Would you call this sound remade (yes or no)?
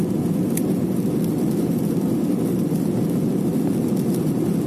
no